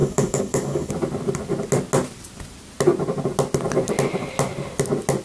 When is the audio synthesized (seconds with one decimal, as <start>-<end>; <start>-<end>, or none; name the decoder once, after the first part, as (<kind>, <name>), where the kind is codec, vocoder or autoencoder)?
0.0-0.9 (codec, DAC)